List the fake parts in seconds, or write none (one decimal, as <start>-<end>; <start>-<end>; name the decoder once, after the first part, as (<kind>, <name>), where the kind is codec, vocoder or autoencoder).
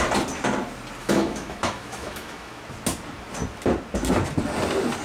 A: 1.0-2.6 (autoencoder, DAC-VAE)